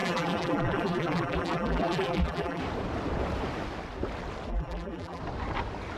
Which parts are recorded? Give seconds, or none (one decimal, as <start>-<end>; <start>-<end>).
2.6-4.5; 5.2-6.0